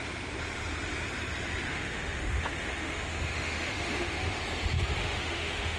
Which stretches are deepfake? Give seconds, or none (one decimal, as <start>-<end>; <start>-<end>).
1.7-4.4; 5.0-5.8